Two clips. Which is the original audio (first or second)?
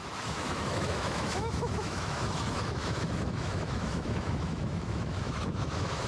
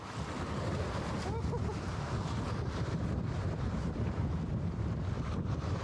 second